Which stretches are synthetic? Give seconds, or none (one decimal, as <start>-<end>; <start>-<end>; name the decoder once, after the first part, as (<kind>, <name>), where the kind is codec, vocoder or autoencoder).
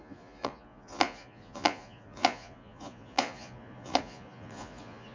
0.0-5.1 (vocoder, Vocos)